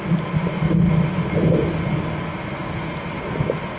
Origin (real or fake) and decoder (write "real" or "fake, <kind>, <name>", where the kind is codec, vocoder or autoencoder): real